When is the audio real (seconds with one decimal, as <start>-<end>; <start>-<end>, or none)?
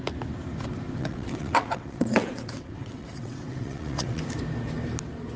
0.0-1.0; 4.2-5.4